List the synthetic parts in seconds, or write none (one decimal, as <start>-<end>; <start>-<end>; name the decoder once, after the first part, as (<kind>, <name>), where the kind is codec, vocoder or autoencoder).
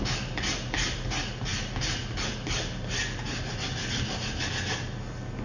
none